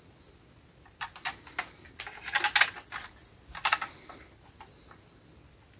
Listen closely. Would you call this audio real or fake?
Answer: real